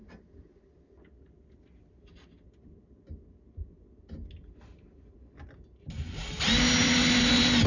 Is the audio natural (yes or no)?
yes